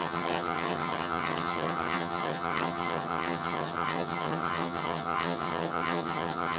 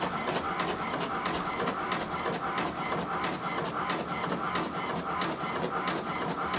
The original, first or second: second